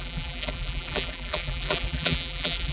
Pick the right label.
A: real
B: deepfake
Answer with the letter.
B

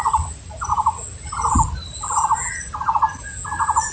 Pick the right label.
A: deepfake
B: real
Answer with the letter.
B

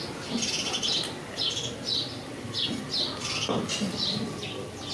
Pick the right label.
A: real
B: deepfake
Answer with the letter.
A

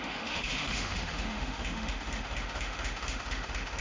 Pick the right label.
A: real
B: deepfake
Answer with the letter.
B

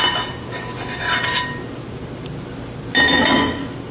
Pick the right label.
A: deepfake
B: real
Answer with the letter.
B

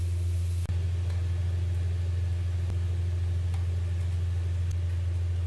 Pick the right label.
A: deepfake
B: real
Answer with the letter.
B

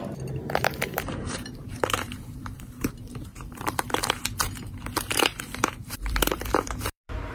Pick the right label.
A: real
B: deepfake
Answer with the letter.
B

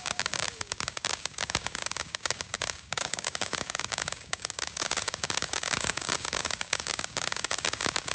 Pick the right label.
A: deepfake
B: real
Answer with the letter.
A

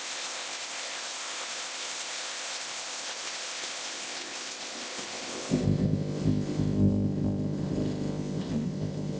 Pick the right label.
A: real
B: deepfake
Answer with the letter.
B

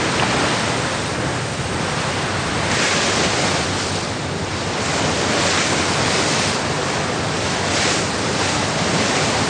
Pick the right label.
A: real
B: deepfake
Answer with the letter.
A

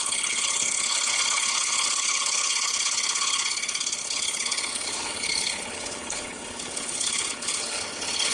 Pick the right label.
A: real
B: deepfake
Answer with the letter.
B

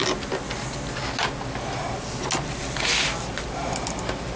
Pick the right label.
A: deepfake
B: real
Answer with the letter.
B